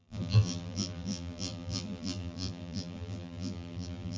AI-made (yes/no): yes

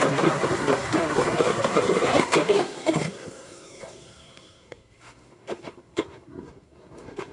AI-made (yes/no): yes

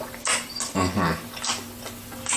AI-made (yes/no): no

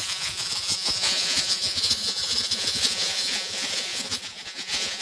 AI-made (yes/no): yes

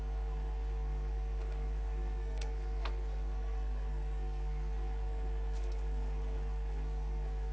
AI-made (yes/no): yes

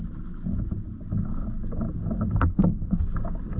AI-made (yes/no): no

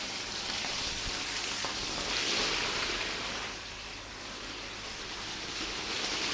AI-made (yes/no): no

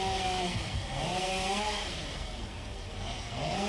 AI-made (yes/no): yes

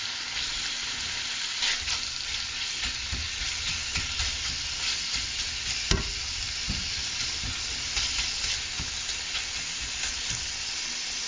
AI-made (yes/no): no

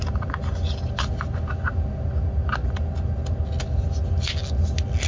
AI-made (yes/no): no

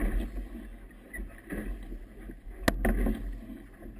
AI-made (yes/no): no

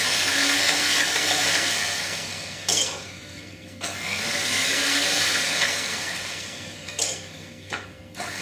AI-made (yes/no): yes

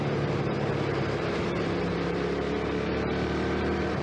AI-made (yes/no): no